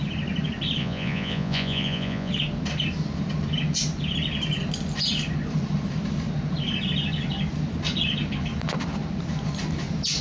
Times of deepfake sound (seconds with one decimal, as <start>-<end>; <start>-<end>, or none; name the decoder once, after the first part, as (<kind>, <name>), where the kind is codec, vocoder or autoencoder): 0.8-2.3 (vocoder, Vocos)